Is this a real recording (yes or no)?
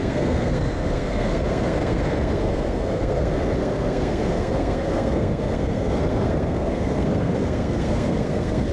no